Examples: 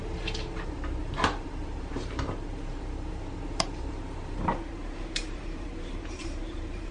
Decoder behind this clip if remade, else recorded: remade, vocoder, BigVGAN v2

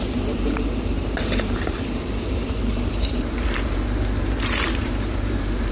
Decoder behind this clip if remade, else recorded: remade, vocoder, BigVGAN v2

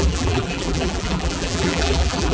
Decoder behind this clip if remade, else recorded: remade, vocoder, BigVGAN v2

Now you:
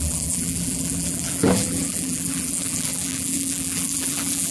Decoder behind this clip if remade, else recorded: remade, vocoder, BigVGAN v2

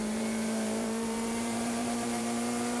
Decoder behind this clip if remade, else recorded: remade, vocoder, BigVGAN v2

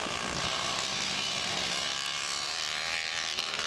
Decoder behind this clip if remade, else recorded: recorded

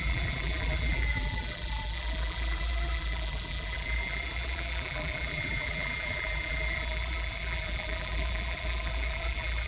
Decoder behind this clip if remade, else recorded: remade, vocoder, BigVGAN v2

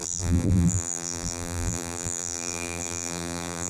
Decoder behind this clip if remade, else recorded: remade, vocoder, BigVGAN v2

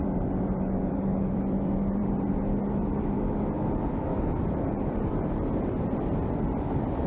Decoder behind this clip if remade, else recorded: remade, vocoder, BigVGAN v2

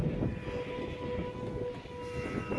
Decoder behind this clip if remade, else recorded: recorded